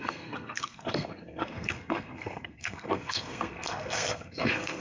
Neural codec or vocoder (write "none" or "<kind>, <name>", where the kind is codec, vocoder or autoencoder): codec, SNAC